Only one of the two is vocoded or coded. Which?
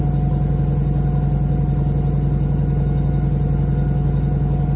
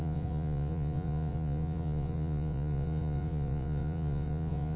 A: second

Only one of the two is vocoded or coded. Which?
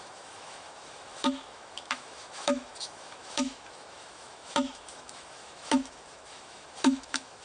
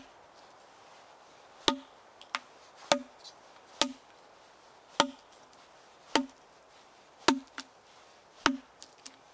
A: first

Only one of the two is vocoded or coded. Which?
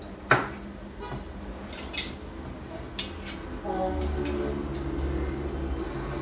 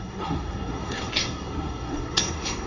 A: second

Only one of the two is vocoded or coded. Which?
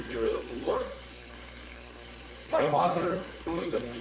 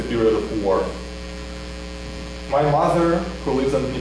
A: first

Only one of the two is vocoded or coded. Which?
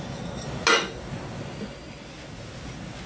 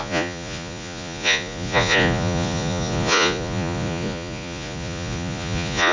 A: second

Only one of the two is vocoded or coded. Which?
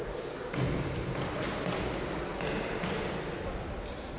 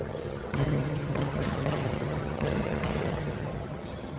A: second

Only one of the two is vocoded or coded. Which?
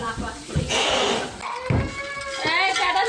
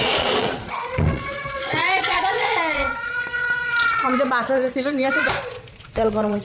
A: second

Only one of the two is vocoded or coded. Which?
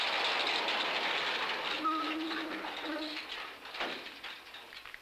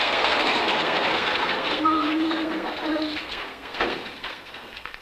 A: second